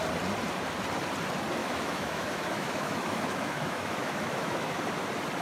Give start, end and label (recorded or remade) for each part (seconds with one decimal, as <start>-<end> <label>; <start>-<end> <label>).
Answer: 0.0-1.6 recorded; 1.6-4.8 remade; 4.8-5.4 recorded